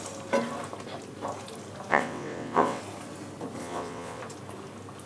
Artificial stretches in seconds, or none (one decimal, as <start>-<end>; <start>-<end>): 1.9-2.8; 3.6-4.2